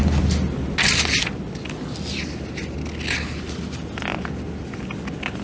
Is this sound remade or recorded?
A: recorded